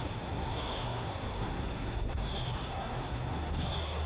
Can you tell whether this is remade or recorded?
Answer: remade